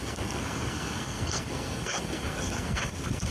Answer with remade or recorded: remade